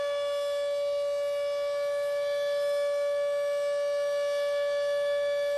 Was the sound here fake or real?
real